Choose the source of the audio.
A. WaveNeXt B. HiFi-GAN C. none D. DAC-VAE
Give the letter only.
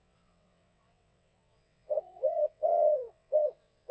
A